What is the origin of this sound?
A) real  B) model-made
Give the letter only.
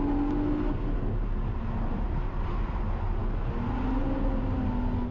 A